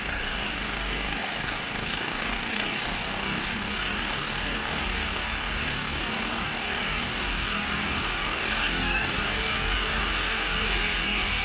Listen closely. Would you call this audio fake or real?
fake